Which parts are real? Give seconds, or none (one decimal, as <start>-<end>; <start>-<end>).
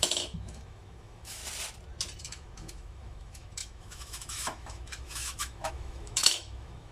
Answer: 1.4-2.2